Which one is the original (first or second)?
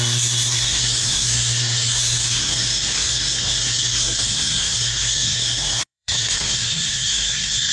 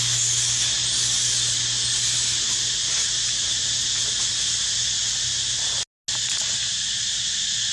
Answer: second